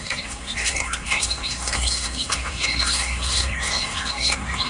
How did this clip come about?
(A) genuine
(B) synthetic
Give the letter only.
B